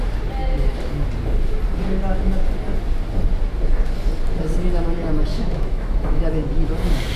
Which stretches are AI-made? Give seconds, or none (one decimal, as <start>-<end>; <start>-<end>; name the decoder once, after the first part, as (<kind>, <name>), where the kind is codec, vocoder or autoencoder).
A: 5.3-6.3 (autoencoder, DAC-VAE)